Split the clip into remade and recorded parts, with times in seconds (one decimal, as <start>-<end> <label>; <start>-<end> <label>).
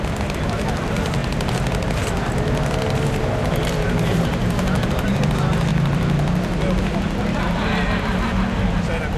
0.0-9.2 recorded